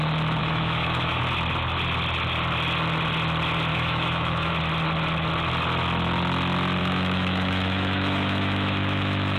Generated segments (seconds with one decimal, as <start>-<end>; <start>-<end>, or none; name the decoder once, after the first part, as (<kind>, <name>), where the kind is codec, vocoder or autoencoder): 0.4-1.2 (autoencoder, DAC-VAE); 3.7-4.5; 6.8-9.4